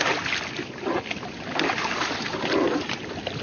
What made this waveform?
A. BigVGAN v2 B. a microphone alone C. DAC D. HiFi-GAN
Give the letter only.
B